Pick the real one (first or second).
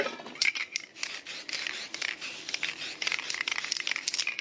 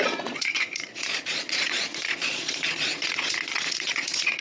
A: first